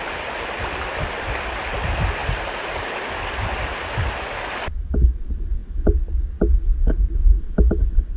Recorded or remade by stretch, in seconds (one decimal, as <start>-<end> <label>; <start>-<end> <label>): 0.0-2.2 recorded; 2.2-3.1 remade; 3.1-8.2 recorded